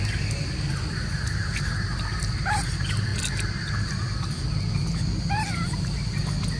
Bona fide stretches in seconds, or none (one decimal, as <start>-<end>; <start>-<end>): 0.0-6.6